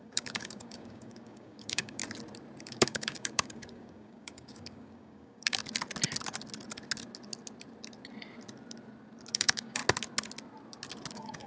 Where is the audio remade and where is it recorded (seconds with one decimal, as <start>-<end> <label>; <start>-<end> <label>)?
0.0-2.0 remade; 2.0-2.6 recorded; 2.6-5.6 remade; 5.6-9.3 recorded; 9.3-9.8 remade; 9.8-11.1 recorded; 11.1-11.5 remade